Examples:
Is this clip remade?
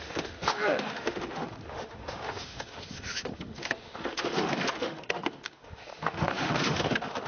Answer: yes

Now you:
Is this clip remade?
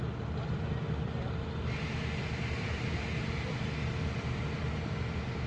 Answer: no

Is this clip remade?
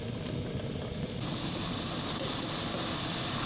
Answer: no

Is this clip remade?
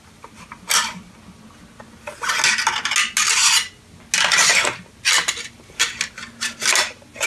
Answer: no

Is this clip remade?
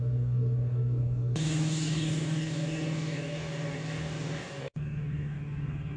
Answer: yes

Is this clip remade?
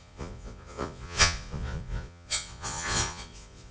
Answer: yes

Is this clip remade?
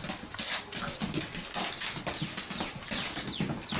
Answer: no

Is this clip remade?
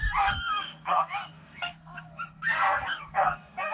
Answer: yes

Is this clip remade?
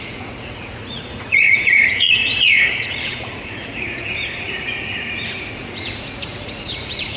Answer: yes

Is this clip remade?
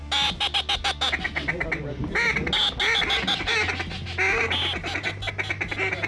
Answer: no